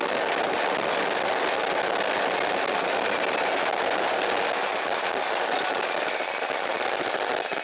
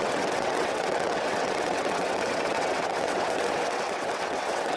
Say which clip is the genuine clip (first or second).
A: first